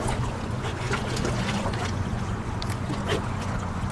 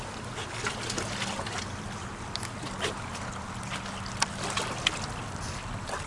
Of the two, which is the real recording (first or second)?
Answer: second